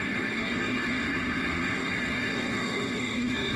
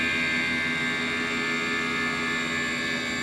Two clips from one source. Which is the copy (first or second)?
first